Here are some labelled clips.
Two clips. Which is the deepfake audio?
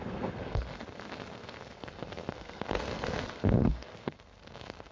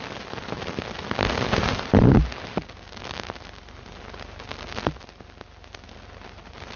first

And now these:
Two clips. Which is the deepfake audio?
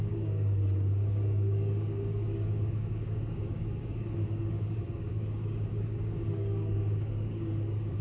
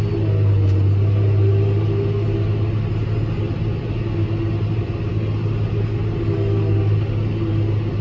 first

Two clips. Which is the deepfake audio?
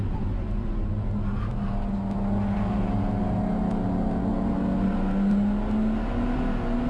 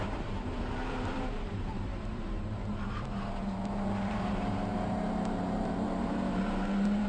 second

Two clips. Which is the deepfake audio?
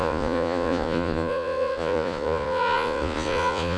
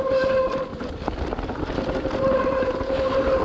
first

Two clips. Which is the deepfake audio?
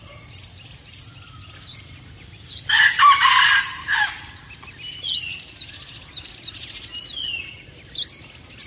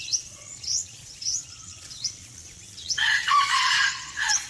second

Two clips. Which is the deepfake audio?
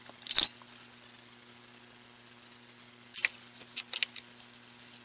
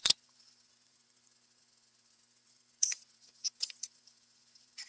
second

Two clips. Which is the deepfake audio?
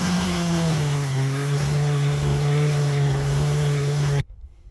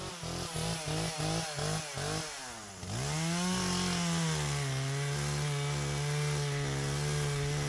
first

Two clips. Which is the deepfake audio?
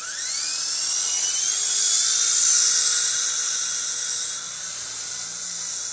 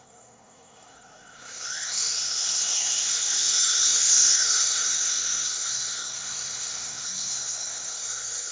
second